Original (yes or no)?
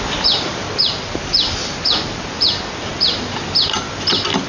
yes